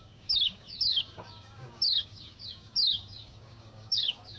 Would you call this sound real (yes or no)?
no